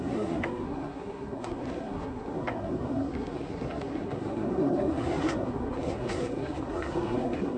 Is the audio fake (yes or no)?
yes